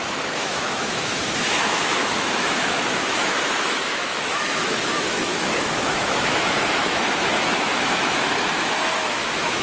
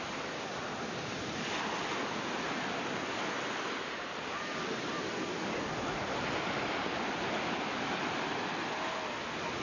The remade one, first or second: first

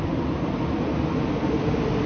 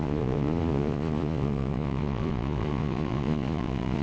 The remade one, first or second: second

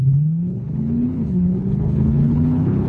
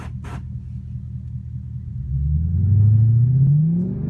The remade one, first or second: first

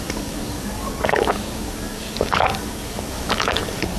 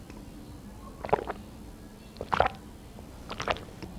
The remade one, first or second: first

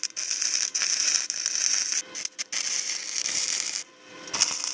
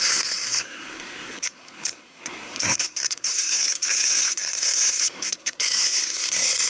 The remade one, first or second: second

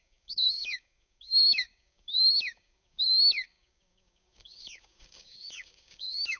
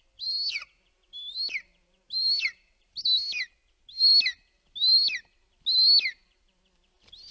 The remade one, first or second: first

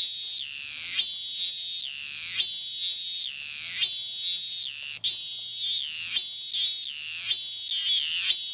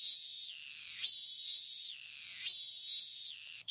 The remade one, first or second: second